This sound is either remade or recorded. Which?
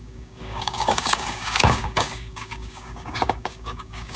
remade